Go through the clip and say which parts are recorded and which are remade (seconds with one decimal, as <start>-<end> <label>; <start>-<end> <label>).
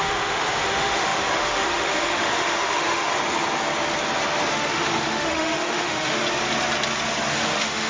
0.0-3.1 remade; 3.1-4.5 recorded; 4.5-6.2 remade; 6.2-7.3 recorded; 7.3-7.9 remade